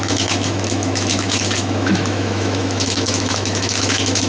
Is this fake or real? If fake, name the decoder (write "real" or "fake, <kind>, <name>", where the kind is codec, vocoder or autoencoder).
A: fake, autoencoder, DAC-VAE